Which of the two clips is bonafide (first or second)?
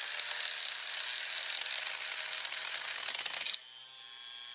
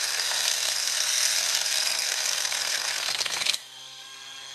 first